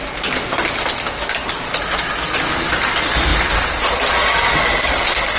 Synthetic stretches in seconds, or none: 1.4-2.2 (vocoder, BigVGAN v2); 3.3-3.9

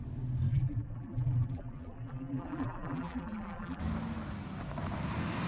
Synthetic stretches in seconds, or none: 0.5-3.8 (vocoder, BigVGAN v2)

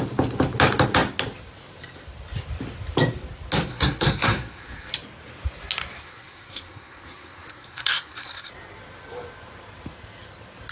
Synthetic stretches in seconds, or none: 3.7-4.9 (codec, SNAC); 6.0-8.5

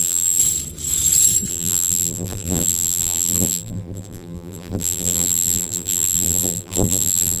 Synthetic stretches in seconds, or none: 0.0-0.4 (vocoder, BigVGAN v2); 1.5-7.4

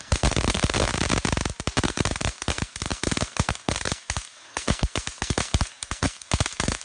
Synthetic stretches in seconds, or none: 0.0-0.9 (codec, SNAC); 1.8-6.8

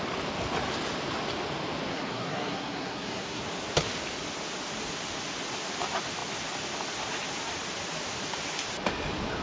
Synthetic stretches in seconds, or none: 1.9-3.4 (codec, SNAC)

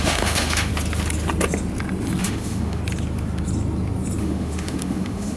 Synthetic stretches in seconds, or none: 0.0-0.7 (autoencoder, DAC-VAE); 2.2-2.8; 4.2-5.4